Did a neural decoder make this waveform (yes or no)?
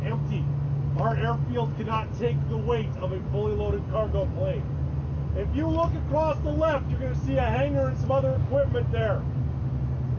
no